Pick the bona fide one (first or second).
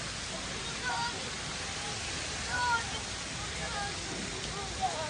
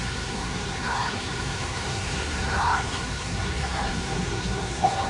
first